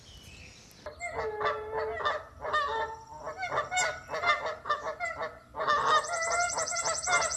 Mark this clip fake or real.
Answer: real